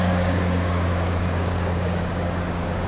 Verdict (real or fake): fake